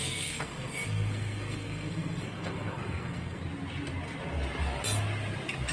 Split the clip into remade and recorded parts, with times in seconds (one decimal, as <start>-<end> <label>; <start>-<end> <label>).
0.0-3.4 remade; 3.4-5.7 recorded